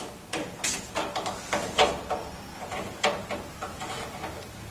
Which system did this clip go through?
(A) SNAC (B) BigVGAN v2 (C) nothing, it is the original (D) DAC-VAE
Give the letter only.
C